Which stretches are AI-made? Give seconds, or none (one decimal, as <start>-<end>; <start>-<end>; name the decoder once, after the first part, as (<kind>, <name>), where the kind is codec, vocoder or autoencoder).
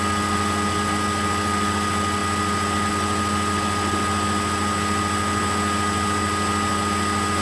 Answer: none